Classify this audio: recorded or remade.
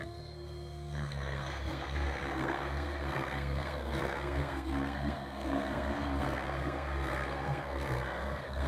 remade